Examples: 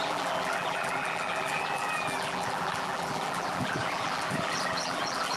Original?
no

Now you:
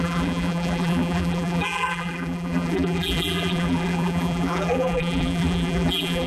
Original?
no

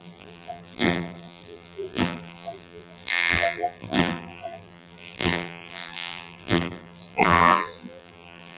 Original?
no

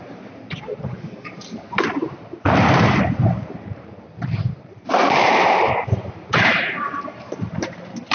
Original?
no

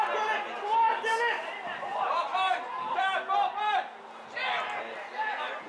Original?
yes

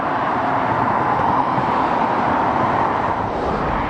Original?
no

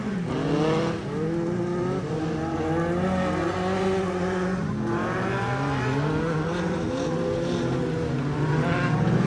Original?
yes